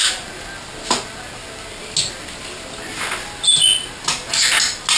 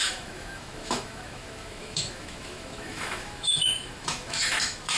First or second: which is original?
first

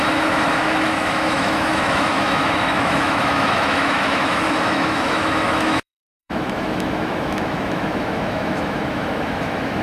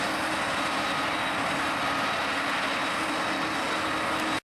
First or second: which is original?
second